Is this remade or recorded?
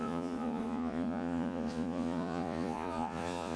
remade